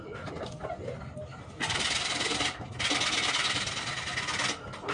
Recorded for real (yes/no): yes